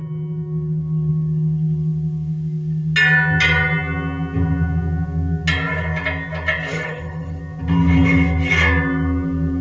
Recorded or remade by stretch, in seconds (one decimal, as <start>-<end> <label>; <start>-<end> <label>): 0.0-6.7 recorded; 6.7-7.4 remade; 7.4-9.6 recorded